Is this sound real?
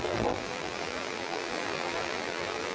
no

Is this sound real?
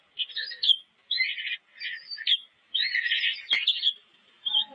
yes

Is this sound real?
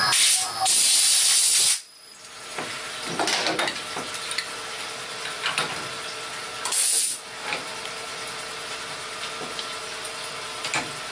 yes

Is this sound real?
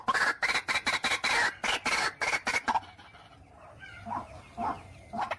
yes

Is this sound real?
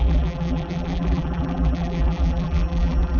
no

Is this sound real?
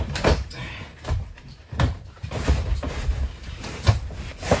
no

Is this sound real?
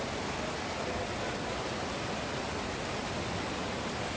yes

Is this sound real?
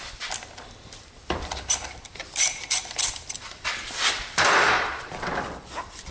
no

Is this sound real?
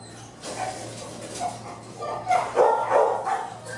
yes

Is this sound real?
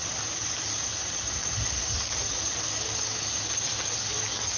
yes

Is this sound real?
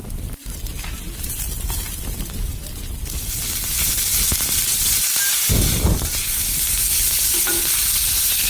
no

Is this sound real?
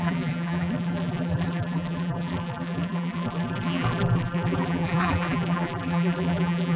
no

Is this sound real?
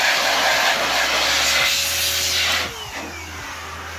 yes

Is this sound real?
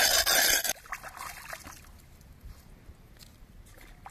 yes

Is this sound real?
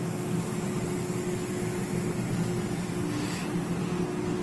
yes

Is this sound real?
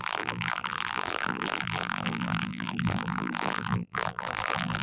no